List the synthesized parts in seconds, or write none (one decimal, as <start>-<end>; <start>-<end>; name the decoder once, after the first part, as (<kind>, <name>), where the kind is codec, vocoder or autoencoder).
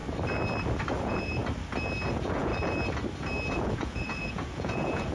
1.0-1.4 (vocoder, Vocos); 2.1-2.5; 3.5-5.1